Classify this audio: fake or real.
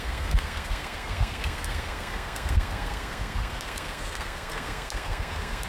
fake